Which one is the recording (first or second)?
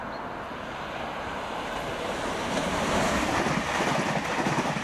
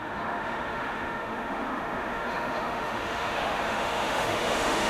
first